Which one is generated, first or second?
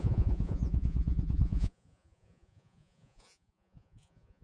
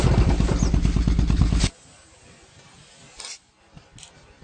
first